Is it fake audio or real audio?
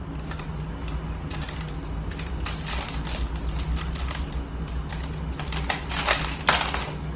real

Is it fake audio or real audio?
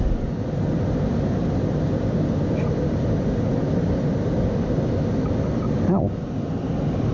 real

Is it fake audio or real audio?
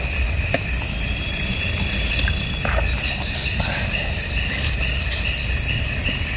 real